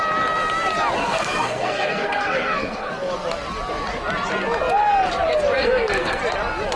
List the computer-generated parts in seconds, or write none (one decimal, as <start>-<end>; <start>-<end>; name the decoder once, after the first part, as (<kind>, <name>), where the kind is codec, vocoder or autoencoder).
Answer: 1.0-2.9 (codec, SNAC); 5.6-6.2